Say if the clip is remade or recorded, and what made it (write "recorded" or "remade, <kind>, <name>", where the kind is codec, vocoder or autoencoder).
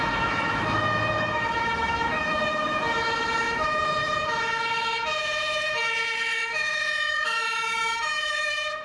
remade, autoencoder, DAC-VAE